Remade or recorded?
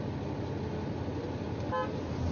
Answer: recorded